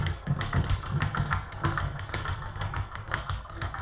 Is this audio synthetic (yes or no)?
yes